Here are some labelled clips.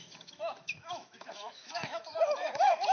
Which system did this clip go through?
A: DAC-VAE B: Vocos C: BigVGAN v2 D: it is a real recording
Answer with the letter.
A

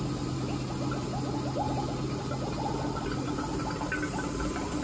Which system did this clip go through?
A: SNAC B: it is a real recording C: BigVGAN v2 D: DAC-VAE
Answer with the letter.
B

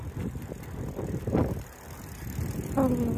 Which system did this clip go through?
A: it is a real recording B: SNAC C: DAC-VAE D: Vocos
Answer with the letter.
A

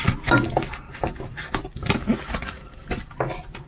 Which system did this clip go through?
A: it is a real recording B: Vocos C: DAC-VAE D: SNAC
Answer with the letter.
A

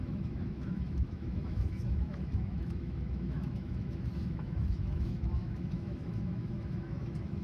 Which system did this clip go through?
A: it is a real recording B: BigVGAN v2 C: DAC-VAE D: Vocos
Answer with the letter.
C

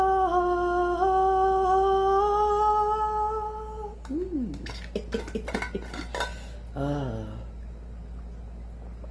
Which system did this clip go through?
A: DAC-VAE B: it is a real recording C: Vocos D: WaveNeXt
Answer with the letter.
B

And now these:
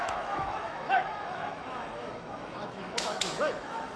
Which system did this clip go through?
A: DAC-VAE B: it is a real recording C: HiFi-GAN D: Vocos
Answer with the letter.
A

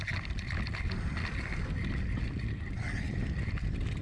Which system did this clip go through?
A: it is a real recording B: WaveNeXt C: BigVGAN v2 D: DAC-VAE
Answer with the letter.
A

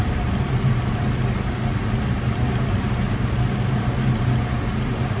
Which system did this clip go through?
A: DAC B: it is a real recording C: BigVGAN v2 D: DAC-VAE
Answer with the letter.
B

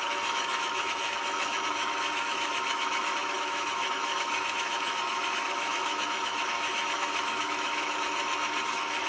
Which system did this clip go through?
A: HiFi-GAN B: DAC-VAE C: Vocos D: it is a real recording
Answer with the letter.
B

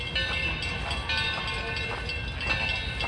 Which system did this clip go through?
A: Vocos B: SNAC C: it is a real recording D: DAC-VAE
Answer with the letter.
C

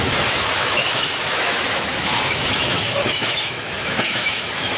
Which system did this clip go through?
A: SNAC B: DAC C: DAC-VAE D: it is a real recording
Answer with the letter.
C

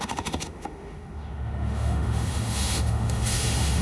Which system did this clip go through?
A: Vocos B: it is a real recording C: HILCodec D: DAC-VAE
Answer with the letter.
D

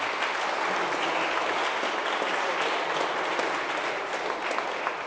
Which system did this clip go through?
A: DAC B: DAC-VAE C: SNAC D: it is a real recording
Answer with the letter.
D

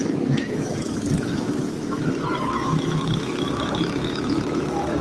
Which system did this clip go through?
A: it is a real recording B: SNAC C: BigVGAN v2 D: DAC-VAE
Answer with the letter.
D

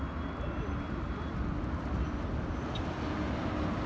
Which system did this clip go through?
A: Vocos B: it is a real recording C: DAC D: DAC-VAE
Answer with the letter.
B